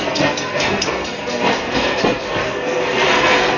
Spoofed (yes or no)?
yes